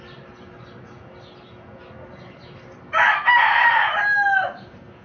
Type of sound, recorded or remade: recorded